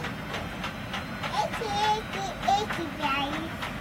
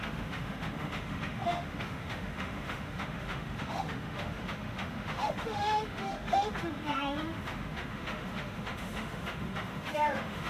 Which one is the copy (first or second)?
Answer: second